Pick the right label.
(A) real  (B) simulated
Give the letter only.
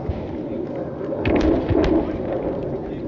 A